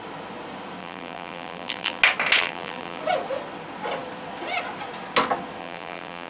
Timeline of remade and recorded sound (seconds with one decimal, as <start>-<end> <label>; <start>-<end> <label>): 0.0-0.8 recorded; 0.8-2.0 remade; 2.0-2.4 recorded; 2.4-3.0 remade; 3.0-5.6 recorded; 5.6-6.3 remade